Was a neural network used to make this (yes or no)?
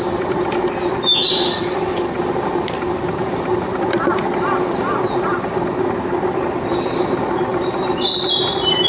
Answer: no